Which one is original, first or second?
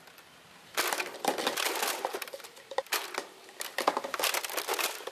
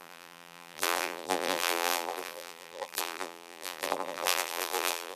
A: first